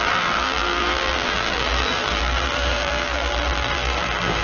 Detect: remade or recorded remade